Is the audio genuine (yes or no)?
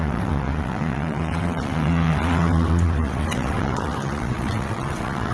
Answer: no